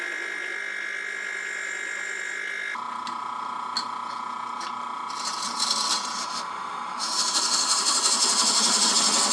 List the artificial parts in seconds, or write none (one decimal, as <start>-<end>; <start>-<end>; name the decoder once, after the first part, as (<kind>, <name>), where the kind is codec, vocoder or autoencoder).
6.2-8.9 (autoencoder, DAC-VAE)